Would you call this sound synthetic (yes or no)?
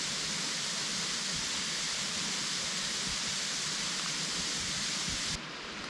no